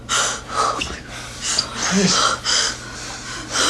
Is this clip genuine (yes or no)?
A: yes